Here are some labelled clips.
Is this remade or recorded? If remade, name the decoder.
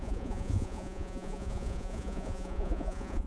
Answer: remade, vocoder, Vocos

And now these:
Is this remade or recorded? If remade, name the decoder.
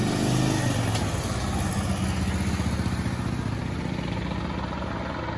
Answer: recorded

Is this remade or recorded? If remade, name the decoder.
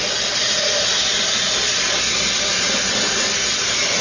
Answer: recorded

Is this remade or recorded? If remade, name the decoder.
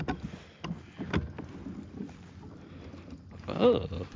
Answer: recorded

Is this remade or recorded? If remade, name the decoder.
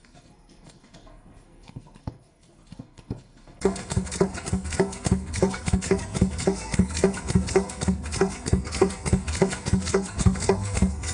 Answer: remade, codec, SNAC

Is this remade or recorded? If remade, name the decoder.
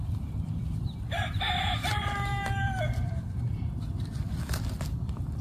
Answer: remade, vocoder, BigVGAN v2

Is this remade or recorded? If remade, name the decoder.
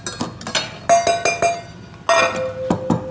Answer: recorded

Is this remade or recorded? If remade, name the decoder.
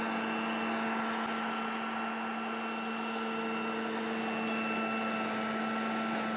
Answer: recorded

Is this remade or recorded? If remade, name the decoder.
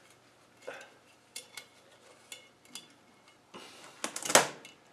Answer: recorded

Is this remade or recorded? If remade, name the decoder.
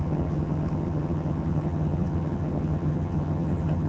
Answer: remade, vocoder, HiFi-GAN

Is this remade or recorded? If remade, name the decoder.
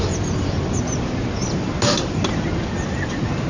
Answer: recorded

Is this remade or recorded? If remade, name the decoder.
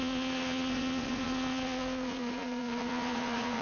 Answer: remade, vocoder, Vocos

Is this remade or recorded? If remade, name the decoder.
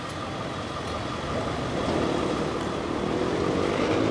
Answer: recorded